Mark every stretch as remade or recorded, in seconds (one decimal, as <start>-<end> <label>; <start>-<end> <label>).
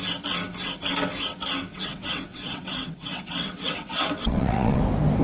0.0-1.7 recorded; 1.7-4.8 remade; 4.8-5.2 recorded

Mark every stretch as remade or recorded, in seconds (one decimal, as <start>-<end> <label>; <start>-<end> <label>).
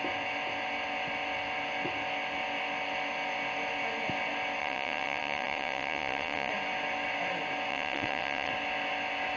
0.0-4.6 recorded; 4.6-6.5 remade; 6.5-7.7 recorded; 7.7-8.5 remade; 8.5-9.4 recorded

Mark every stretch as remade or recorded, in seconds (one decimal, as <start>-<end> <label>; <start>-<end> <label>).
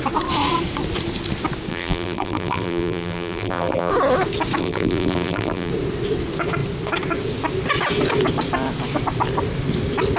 0.0-1.7 recorded; 1.7-3.9 remade; 3.9-4.6 recorded; 4.6-5.7 remade; 5.7-10.2 recorded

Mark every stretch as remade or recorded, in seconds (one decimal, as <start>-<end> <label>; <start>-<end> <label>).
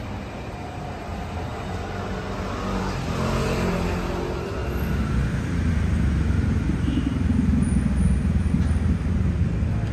0.0-9.9 recorded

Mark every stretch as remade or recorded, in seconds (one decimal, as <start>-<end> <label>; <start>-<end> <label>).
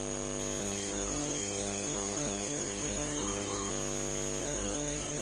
0.0-0.6 recorded; 0.6-3.7 remade; 3.7-4.4 recorded; 4.4-5.2 remade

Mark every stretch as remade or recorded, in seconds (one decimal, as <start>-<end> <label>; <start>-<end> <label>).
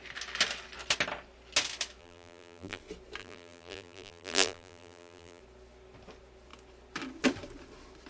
0.0-2.0 recorded; 2.0-2.8 remade; 2.8-3.2 recorded; 3.2-5.4 remade; 5.4-8.1 recorded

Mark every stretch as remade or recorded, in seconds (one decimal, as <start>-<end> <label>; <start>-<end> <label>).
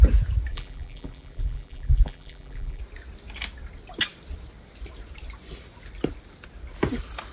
0.0-0.5 recorded; 0.5-2.8 remade; 2.8-7.3 recorded